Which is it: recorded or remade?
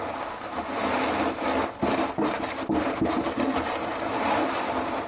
recorded